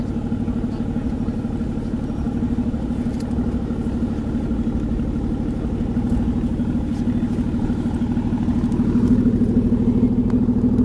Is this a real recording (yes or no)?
yes